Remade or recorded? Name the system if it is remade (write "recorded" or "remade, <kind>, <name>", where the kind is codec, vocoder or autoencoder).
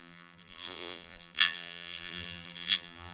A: remade, vocoder, BigVGAN v2